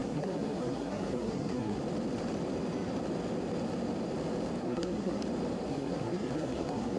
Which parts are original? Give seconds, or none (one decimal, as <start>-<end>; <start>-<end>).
1.8-4.6; 5.2-5.7